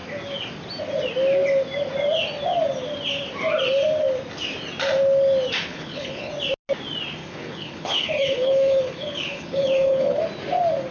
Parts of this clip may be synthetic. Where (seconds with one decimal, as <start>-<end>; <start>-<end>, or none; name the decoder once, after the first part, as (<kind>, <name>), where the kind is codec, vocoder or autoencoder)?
5.7-6.3 (codec, HILCodec); 7.2-10.2